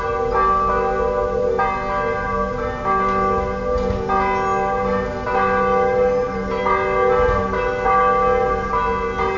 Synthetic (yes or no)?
no